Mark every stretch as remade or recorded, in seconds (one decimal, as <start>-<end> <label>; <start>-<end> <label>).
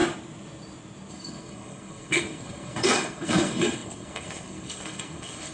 0.0-1.1 recorded; 1.1-5.5 remade